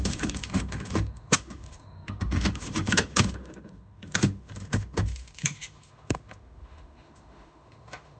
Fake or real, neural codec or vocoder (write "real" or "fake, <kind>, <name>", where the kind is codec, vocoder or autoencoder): fake, autoencoder, DAC-VAE